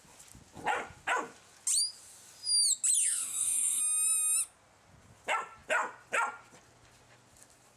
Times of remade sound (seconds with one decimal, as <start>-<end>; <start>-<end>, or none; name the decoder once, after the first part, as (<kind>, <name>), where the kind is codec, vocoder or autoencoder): 3.0-3.8 (codec, DAC)